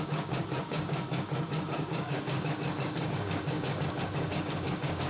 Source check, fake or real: fake